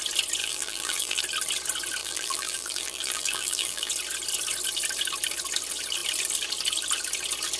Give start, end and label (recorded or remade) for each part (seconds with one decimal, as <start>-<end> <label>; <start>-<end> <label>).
0.0-0.4 recorded; 0.4-1.2 remade; 1.2-2.0 recorded; 2.0-3.9 remade; 3.9-7.6 recorded